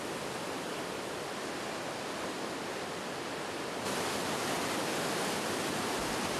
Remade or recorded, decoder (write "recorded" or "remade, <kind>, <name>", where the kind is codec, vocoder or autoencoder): recorded